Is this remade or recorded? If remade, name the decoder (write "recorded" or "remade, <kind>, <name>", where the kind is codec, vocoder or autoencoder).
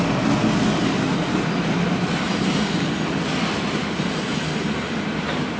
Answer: recorded